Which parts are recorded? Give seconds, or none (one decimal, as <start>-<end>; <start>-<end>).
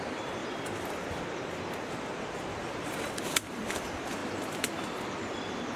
0.4-2.7; 4.2-5.8